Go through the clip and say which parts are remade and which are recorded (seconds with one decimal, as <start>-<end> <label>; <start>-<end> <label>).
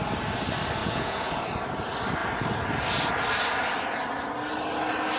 0.0-0.8 recorded; 0.8-1.3 remade; 1.3-5.2 recorded